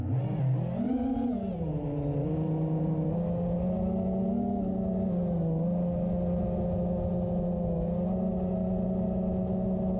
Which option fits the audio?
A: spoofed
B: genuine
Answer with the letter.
B